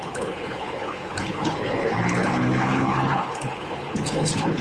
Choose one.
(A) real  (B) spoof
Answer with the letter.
B